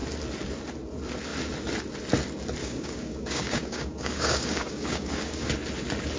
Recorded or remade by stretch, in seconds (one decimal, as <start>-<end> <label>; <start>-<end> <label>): 0.0-2.6 recorded; 2.6-5.5 remade; 5.5-6.2 recorded

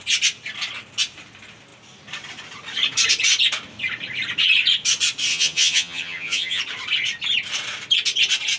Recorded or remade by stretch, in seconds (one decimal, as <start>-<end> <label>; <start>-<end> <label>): 0.0-5.3 recorded; 5.3-6.6 remade; 6.6-8.6 recorded

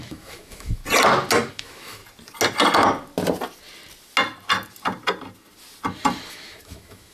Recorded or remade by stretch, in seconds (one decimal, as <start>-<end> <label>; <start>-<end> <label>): 0.0-0.8 remade; 0.8-1.5 recorded; 1.5-2.0 remade; 2.0-6.3 recorded; 6.3-7.1 remade

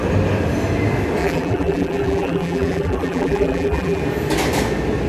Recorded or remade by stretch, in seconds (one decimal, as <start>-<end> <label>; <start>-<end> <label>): 0.0-1.2 recorded; 1.2-4.0 remade; 4.0-5.1 recorded